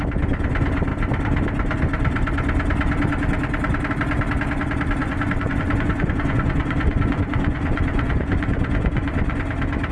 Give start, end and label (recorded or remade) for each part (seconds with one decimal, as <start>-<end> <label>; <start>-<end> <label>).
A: 0.0-5.0 recorded; 5.0-9.4 remade; 9.4-9.9 recorded